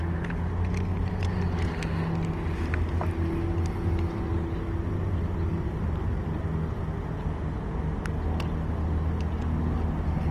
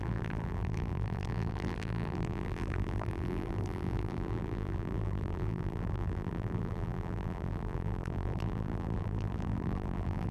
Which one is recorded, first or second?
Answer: first